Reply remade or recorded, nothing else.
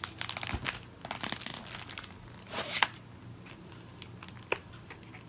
recorded